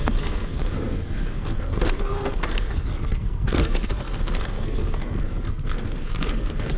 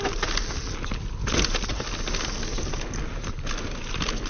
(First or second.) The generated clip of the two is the first